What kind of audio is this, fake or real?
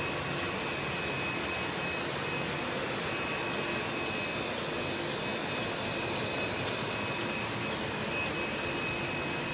real